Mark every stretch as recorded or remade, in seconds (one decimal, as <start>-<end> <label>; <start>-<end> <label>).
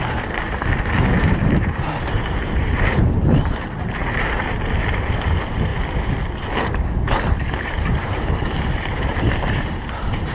0.0-5.7 remade; 5.7-7.6 recorded; 7.6-10.3 remade